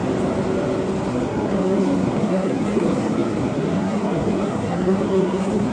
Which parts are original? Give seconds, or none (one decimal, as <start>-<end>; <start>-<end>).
0.0-1.1